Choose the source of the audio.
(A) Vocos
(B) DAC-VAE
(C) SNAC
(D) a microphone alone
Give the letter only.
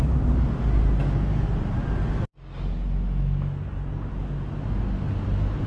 D